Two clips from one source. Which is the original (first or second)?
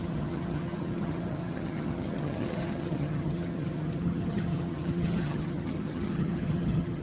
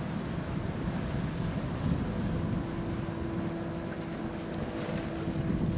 second